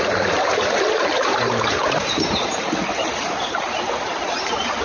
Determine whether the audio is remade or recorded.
remade